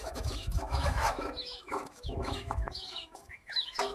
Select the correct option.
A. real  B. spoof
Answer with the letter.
B